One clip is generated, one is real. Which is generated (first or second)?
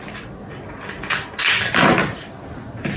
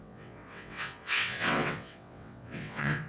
second